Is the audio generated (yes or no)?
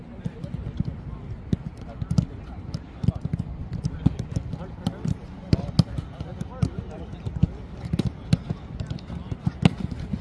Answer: no